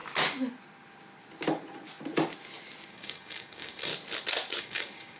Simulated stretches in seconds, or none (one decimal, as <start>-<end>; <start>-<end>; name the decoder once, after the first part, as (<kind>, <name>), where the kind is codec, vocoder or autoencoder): 2.9-3.9 (codec, DAC); 4.6-5.2